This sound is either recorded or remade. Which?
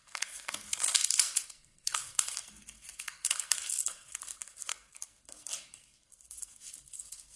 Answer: remade